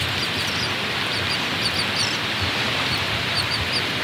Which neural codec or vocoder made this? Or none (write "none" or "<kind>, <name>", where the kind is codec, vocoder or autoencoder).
none